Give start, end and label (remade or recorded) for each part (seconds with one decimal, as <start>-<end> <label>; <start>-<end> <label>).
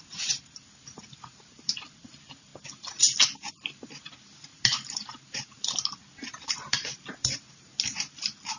0.0-2.5 remade; 2.5-3.5 recorded; 3.5-8.6 remade